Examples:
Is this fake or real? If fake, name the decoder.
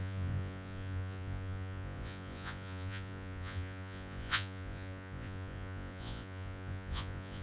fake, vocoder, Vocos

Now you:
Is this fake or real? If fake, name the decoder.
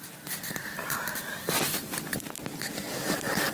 fake, vocoder, BigVGAN v2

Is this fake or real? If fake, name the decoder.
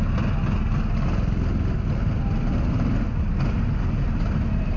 real